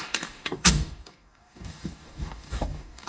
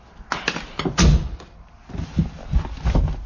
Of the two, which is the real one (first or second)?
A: second